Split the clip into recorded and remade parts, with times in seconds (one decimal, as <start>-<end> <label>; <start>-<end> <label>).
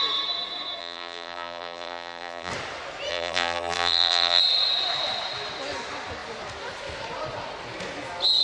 0.0-0.8 recorded; 0.8-2.5 remade; 2.5-3.1 recorded; 3.1-4.4 remade; 4.4-8.4 recorded